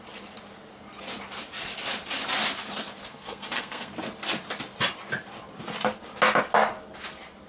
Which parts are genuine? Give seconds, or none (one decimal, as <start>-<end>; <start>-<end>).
0.0-3.1; 3.9-7.5